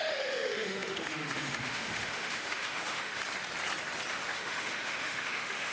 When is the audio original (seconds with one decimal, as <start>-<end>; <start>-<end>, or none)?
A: 3.2-4.1